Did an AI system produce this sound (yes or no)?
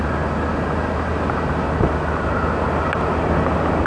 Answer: no